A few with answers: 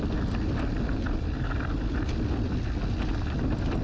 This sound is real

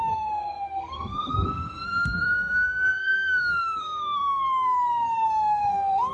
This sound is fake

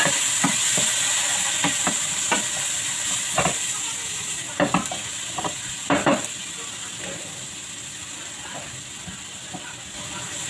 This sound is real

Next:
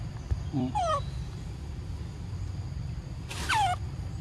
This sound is fake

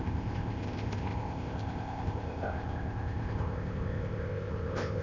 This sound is fake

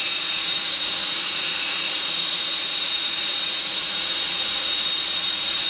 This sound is fake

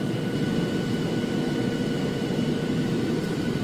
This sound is real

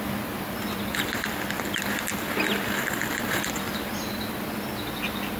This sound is real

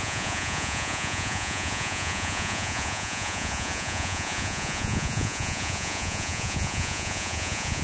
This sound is fake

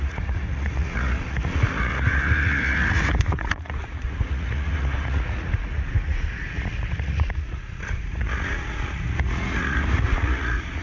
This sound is fake